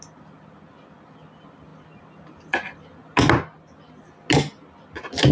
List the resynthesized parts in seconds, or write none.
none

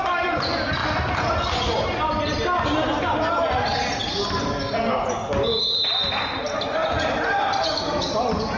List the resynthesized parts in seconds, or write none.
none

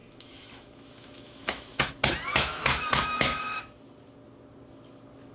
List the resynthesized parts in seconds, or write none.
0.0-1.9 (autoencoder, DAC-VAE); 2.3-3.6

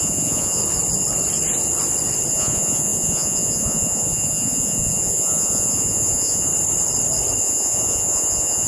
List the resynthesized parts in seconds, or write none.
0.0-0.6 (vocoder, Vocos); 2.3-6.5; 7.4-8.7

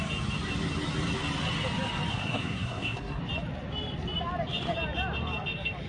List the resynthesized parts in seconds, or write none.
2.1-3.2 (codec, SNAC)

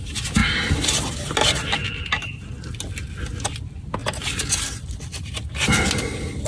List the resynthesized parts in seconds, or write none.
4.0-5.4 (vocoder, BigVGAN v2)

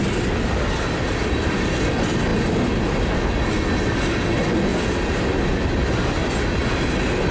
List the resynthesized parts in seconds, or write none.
none

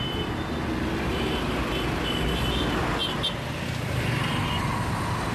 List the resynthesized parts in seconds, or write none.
none